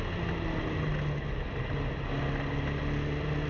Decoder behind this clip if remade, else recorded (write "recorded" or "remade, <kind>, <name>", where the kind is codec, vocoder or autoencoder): recorded